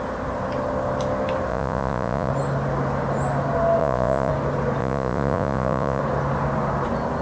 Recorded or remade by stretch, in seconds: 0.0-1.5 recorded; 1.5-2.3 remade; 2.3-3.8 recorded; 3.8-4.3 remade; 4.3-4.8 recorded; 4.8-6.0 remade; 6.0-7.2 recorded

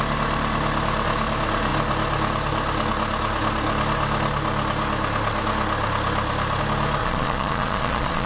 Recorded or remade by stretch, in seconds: 0.0-7.0 recorded; 7.0-8.3 remade

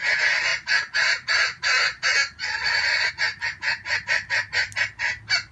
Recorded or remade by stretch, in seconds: 0.0-2.2 recorded; 2.2-3.1 remade; 3.1-5.5 recorded

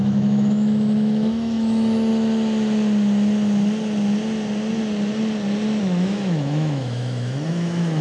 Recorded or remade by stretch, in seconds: 0.0-2.1 remade; 2.1-5.8 recorded; 5.8-8.0 remade

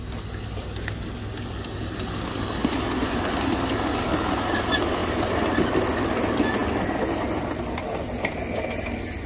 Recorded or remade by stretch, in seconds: 0.0-2.6 recorded; 2.6-3.2 remade; 3.2-9.3 recorded

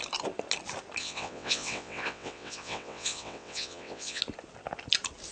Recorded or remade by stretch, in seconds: 0.0-1.0 recorded; 1.0-4.2 remade; 4.2-5.3 recorded